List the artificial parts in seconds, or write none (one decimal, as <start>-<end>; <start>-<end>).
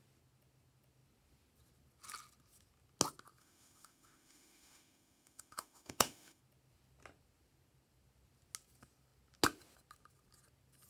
3.4-6.4